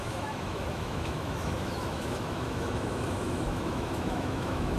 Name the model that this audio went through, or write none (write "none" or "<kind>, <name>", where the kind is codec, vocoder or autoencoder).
autoencoder, DAC-VAE